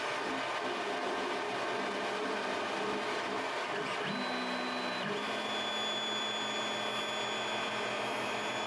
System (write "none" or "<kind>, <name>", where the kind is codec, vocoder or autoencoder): none